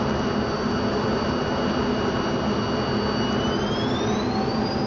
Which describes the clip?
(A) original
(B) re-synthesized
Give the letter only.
A